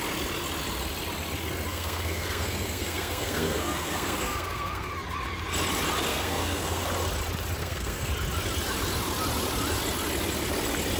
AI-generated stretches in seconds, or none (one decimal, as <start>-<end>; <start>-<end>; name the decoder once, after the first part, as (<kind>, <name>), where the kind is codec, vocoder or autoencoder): 1.7-4.9 (codec, SNAC); 6.1-6.8; 7.6-8.1